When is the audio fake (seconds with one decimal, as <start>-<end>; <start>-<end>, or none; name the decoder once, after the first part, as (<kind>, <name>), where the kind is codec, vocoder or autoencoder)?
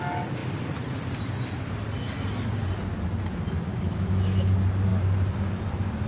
3.7-4.5 (autoencoder, DAC-VAE)